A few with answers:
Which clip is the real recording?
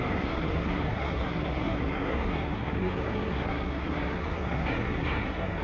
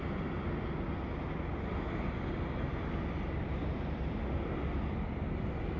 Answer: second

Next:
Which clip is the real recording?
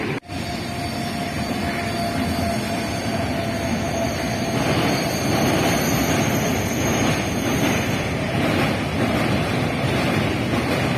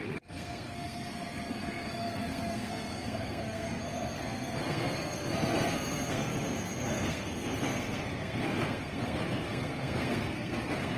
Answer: first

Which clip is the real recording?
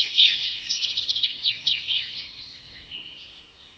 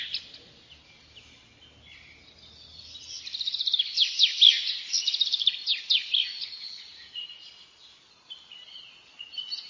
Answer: second